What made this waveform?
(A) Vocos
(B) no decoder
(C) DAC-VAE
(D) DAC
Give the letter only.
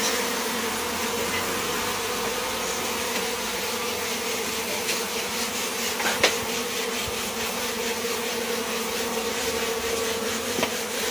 B